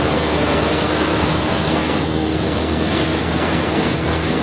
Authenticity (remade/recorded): remade